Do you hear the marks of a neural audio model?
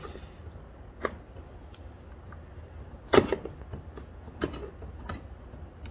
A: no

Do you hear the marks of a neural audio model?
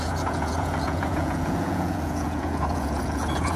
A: yes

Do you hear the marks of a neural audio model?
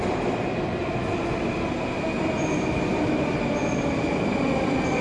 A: yes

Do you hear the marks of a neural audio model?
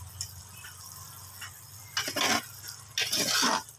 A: no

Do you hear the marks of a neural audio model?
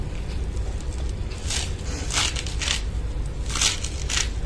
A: no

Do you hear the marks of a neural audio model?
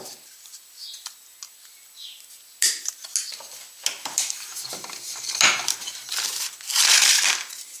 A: no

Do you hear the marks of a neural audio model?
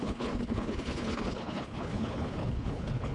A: yes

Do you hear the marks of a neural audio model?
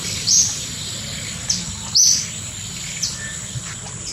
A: no